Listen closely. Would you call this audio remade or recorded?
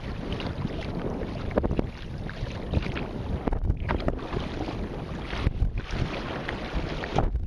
recorded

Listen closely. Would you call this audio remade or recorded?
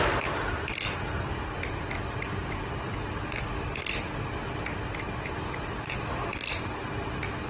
recorded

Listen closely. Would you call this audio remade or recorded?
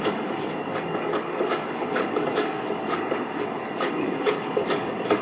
remade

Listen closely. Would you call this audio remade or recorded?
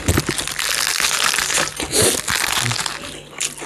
recorded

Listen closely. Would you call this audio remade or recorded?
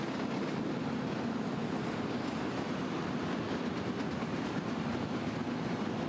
recorded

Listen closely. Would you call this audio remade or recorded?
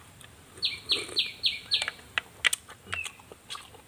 recorded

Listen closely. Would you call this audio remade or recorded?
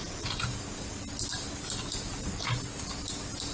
recorded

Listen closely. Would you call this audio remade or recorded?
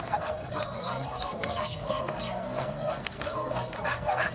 remade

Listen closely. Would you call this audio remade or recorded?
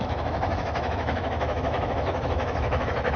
remade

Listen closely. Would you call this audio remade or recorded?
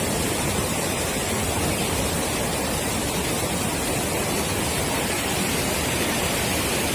recorded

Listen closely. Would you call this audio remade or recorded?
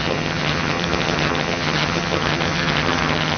remade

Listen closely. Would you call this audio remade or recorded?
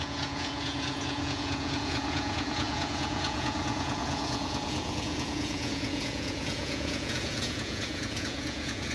remade